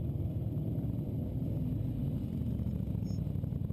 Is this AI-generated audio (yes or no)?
no